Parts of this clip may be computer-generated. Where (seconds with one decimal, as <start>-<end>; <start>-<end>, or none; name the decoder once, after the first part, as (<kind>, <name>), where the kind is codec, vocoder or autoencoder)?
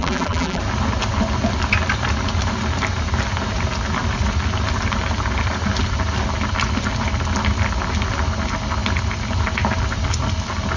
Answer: 0.0-0.6 (vocoder, BigVGAN v2)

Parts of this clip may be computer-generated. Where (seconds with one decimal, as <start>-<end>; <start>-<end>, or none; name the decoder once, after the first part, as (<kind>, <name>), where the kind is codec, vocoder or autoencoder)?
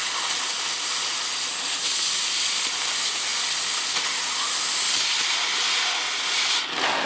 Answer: none